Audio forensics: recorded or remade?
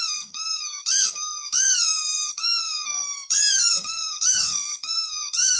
remade